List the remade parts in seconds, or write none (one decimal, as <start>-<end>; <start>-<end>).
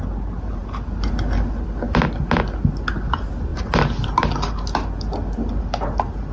none